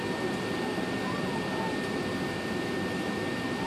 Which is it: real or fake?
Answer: real